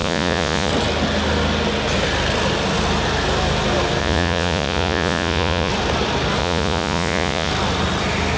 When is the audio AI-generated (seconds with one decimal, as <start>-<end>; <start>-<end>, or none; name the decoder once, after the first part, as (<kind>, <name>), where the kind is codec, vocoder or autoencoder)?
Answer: 0.0-0.7 (vocoder, Vocos); 4.0-5.7; 6.4-7.5